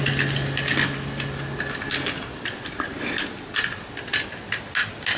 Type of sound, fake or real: real